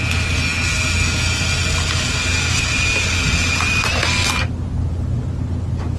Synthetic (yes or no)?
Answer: no